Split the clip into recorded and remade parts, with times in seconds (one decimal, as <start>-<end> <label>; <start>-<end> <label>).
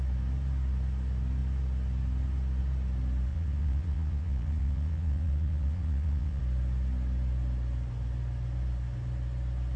0.0-3.3 recorded; 3.3-6.4 remade; 6.4-9.8 recorded